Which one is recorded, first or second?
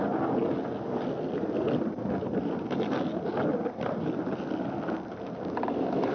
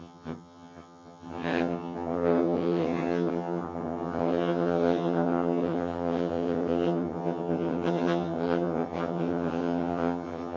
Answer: first